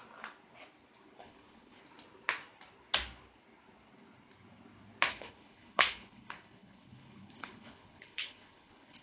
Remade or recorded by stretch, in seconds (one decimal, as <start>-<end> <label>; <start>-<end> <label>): 0.0-1.2 recorded; 1.2-1.8 remade; 1.8-5.1 recorded; 5.1-9.0 remade